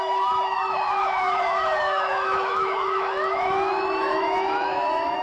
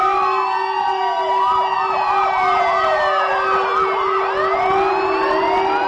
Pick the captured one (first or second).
second